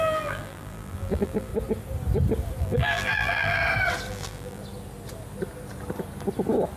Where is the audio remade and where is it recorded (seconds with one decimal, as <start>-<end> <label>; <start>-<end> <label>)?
0.0-1.5 remade; 1.5-2.6 recorded; 2.6-3.6 remade; 3.6-4.1 recorded; 4.1-4.6 remade; 4.6-6.8 recorded